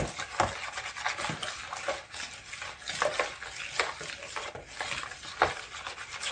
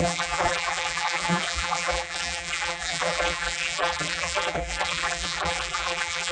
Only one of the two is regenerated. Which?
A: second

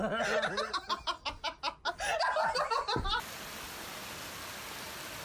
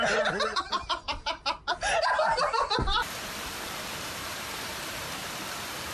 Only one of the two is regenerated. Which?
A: second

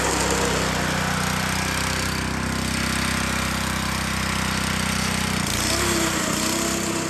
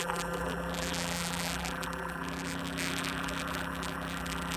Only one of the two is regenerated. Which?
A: second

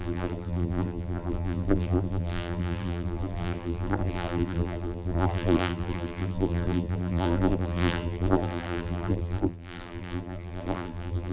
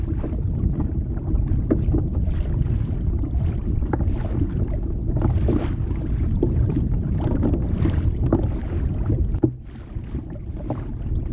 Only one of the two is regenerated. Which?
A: first